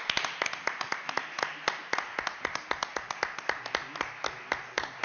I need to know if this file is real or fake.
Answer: real